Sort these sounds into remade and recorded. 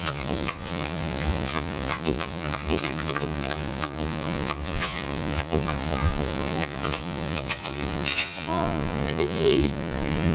remade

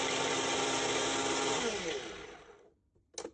recorded